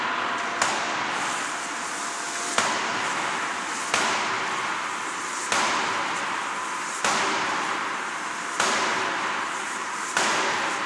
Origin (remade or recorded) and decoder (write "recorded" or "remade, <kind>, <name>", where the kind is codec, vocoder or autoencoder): remade, vocoder, BigVGAN v2